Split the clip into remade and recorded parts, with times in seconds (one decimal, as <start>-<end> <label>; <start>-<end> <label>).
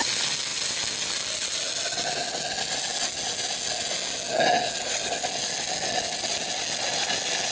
0.0-7.5 recorded